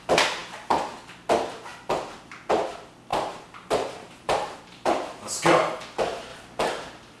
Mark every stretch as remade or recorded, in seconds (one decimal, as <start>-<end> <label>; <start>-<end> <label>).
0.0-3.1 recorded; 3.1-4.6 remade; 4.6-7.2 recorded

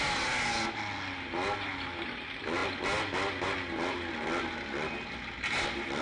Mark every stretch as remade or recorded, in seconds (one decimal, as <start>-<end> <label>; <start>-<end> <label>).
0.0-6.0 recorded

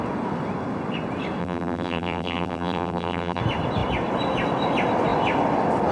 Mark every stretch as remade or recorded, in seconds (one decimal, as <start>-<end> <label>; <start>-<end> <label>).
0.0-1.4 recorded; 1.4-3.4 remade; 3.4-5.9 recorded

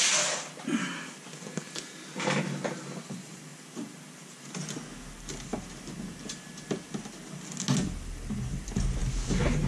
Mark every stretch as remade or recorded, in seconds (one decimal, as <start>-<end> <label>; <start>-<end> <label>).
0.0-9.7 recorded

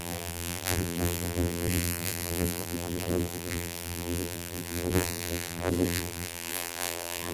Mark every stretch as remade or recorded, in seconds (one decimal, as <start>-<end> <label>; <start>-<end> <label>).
0.0-7.3 remade

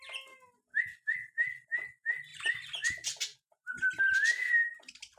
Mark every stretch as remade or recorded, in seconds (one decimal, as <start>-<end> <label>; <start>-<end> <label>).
0.0-0.7 recorded; 0.7-1.3 remade; 1.3-2.3 recorded; 2.3-5.2 remade

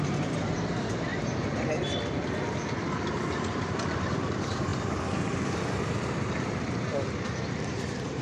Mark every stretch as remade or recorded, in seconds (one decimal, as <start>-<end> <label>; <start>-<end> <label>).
0.0-1.1 remade; 1.1-3.4 recorded; 3.4-8.2 remade

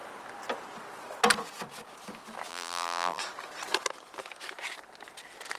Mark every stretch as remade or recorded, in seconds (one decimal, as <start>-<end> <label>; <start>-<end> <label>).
0.0-2.5 recorded; 2.5-3.2 remade; 3.2-5.6 recorded